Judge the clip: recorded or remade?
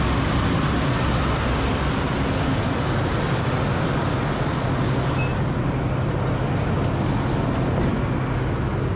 recorded